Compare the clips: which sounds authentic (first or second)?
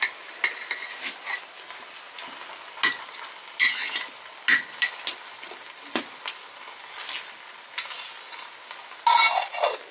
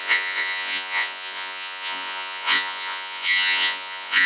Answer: first